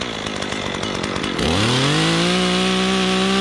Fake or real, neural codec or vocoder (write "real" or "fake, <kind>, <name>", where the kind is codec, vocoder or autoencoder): real